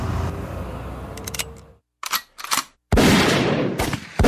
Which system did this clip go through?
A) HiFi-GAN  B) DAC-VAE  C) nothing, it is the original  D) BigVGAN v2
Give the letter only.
C